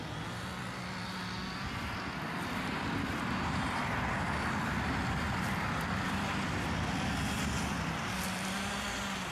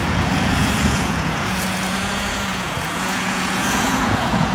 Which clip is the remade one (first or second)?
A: second